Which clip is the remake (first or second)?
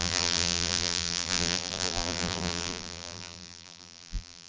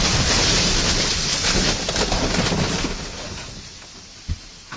first